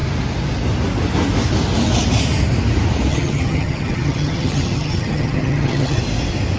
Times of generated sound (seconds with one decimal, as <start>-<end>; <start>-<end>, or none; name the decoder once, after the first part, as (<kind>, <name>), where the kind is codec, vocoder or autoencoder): 3.1-6.0 (vocoder, HiFi-GAN)